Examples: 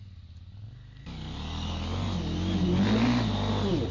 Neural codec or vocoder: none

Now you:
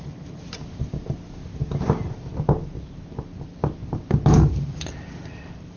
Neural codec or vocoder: none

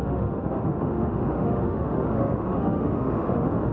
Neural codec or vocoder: autoencoder, DAC-VAE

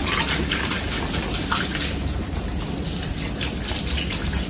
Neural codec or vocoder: none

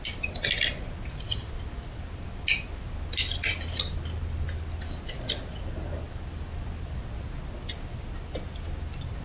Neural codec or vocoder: none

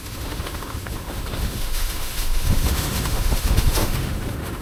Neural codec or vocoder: autoencoder, DAC-VAE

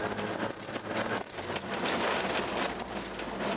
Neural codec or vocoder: none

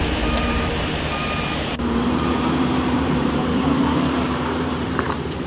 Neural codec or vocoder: vocoder, BigVGAN v2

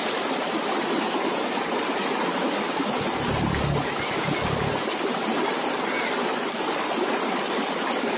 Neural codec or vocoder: none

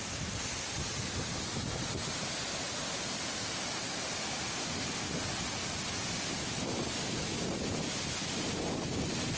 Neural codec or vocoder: none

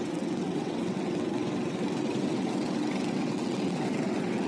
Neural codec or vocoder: vocoder, WaveNeXt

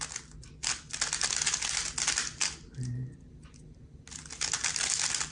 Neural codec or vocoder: none